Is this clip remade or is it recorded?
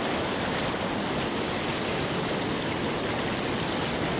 recorded